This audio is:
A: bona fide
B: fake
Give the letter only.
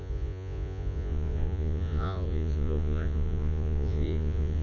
B